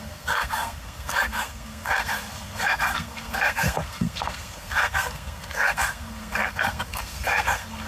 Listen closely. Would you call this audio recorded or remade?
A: remade